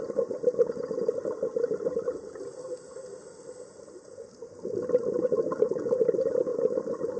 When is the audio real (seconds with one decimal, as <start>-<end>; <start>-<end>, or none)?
0.0-7.2